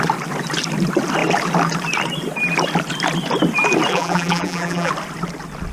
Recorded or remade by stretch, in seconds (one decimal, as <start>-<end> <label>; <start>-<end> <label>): 0.0-3.9 recorded; 3.9-4.9 remade; 4.9-5.7 recorded